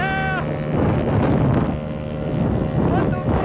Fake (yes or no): no